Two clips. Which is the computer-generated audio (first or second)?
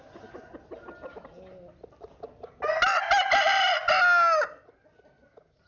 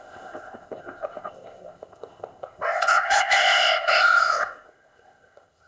second